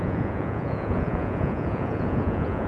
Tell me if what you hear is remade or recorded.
remade